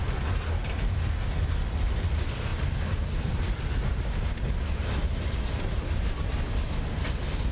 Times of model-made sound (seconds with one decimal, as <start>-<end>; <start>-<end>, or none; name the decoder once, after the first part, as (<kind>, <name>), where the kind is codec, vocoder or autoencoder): none